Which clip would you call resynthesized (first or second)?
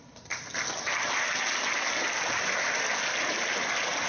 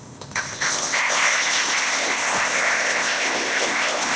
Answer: second